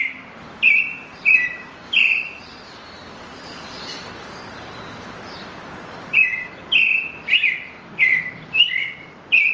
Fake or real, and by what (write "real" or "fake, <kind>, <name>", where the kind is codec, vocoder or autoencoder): fake, vocoder, BigVGAN v2